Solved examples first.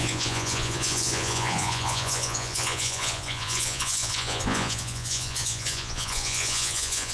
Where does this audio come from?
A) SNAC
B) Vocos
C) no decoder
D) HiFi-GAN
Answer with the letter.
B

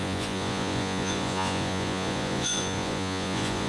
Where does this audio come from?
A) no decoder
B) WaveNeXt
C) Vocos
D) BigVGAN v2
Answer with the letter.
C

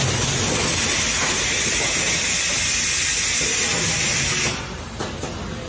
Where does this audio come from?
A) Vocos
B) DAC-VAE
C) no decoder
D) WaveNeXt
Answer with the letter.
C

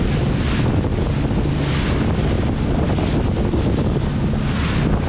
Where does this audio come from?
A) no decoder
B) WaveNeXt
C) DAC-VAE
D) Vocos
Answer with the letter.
A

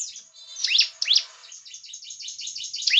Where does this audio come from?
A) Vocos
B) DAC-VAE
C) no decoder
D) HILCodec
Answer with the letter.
C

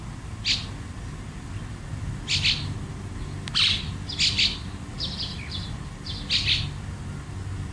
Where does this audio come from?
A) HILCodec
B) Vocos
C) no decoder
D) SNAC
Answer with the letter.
C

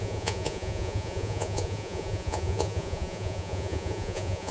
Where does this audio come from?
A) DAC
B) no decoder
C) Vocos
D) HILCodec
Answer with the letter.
C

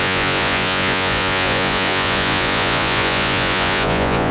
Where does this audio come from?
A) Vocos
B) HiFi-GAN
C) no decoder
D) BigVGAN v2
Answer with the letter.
A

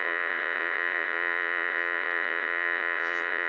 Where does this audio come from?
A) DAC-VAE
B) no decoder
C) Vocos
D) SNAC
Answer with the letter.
C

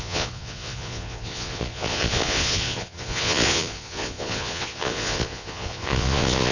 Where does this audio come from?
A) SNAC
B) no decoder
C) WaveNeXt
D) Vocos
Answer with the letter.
D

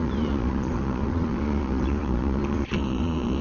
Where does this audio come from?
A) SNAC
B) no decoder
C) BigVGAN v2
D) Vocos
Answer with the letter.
D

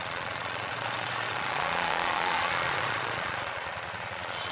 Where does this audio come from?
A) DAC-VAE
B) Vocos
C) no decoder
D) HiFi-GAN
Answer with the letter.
B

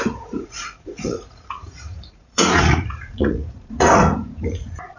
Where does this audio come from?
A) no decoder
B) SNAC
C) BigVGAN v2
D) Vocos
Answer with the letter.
D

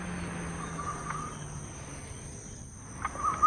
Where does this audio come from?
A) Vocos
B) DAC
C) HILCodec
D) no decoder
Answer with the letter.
D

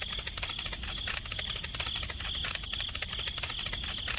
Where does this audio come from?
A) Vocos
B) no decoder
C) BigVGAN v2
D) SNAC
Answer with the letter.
B